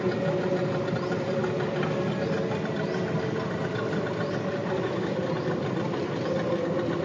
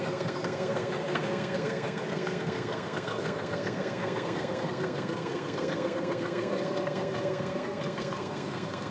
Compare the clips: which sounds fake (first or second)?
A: second